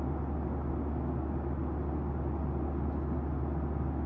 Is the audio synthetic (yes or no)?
no